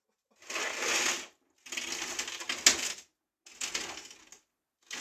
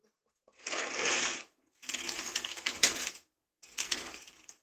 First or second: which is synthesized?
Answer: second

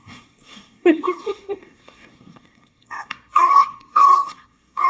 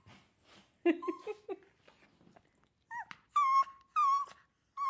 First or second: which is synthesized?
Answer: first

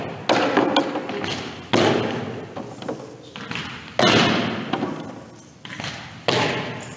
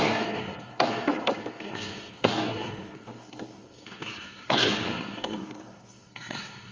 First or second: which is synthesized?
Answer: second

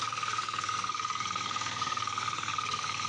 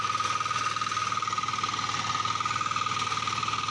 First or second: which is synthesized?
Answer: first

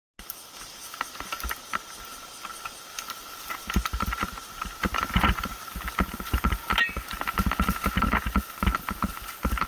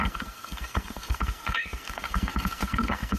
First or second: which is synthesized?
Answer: second